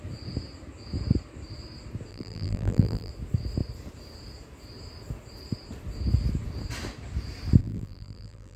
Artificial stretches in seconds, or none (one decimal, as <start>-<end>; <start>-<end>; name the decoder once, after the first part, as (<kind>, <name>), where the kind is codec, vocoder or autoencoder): 2.1-3.1 (vocoder, BigVGAN v2); 7.6-8.6